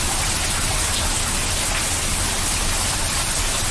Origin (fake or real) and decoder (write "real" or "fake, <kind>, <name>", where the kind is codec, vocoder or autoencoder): real